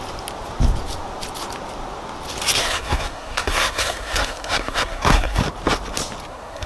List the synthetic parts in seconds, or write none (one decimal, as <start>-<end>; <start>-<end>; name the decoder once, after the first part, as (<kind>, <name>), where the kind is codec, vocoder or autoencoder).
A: 2.6-5.4 (codec, SNAC); 6.3-6.7